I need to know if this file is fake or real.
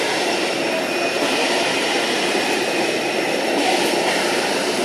real